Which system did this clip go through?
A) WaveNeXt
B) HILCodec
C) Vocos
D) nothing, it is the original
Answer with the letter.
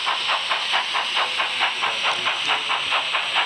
D